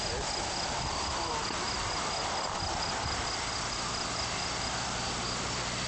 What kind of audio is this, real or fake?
real